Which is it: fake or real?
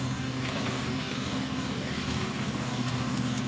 fake